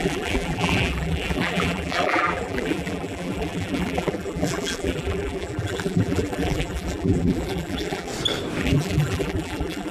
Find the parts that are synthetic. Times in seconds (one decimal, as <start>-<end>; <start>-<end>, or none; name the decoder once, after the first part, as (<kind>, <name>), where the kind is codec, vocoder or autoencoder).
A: 0.0-8.1 (vocoder, BigVGAN v2); 8.6-9.9